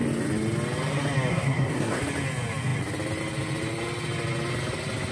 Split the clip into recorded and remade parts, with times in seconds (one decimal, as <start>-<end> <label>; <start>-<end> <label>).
0.0-1.3 recorded; 1.3-2.0 remade; 2.0-5.1 recorded

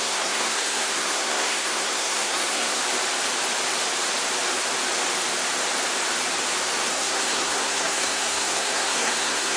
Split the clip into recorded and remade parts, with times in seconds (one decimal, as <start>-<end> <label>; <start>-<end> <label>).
0.0-2.8 remade; 2.8-6.9 recorded; 6.9-9.6 remade

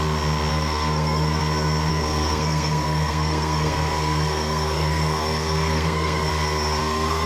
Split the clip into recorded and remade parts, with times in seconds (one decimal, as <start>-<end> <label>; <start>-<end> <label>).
0.0-0.5 recorded; 0.5-1.4 remade; 1.4-1.9 recorded; 1.9-6.3 remade; 6.3-6.8 recorded; 6.8-7.3 remade

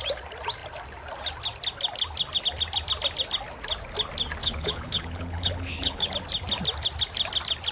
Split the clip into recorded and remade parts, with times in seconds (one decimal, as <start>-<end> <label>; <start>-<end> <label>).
0.0-4.4 recorded; 4.4-6.1 remade; 6.1-7.7 recorded